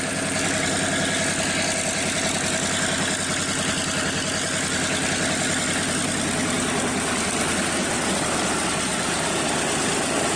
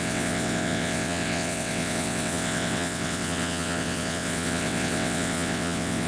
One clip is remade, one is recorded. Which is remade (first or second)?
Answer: second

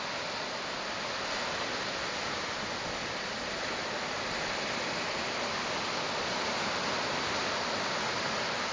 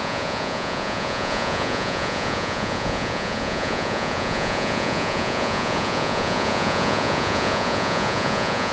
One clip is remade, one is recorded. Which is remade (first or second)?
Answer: second